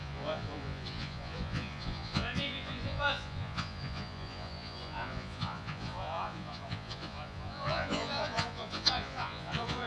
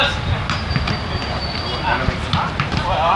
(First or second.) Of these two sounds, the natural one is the second